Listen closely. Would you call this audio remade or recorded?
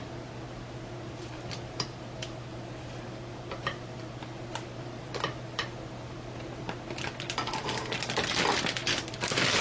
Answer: recorded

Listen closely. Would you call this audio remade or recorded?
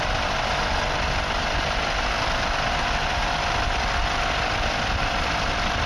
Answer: recorded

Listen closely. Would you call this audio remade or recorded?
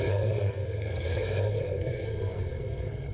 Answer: remade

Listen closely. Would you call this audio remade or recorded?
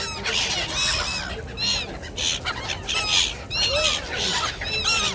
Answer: recorded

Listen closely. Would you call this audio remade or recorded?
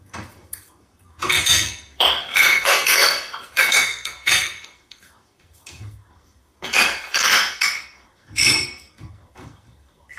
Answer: remade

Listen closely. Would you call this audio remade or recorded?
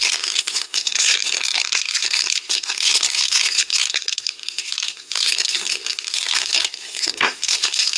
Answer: remade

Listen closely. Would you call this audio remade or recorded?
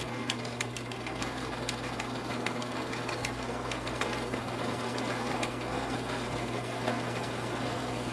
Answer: remade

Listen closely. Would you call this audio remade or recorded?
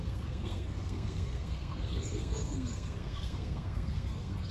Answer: remade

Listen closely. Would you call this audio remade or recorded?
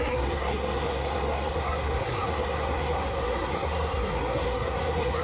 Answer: remade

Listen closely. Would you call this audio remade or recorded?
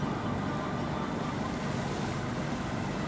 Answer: recorded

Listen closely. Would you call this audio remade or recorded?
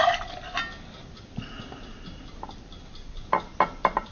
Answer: recorded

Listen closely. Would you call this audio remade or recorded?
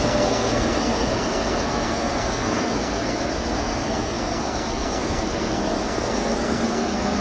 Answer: remade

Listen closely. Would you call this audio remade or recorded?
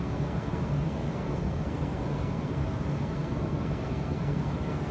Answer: remade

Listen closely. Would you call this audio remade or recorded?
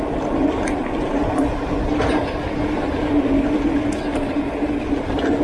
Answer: recorded